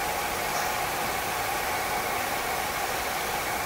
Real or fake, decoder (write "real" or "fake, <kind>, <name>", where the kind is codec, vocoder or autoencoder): real